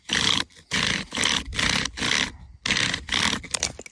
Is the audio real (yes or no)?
yes